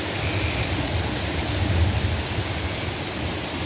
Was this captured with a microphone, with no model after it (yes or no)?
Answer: yes